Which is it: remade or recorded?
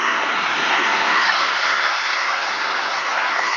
remade